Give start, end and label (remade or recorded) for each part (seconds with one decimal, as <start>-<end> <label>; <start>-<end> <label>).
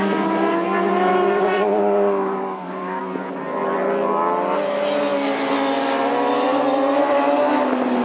0.0-1.1 recorded; 1.1-3.0 remade; 3.0-8.0 recorded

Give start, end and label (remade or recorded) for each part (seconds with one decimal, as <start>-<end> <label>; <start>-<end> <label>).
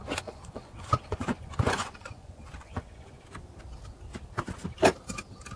0.0-3.2 remade; 3.2-5.6 recorded